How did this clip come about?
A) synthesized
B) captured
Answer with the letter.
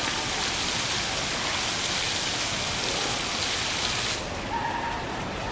B